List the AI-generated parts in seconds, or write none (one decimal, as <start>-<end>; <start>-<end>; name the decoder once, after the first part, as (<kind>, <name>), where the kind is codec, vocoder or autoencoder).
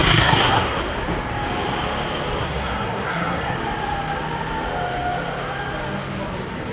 0.0-0.8 (codec, SNAC); 2.4-3.6